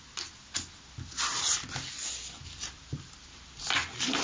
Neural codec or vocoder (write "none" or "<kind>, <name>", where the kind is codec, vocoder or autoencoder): none